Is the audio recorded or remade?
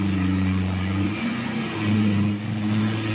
remade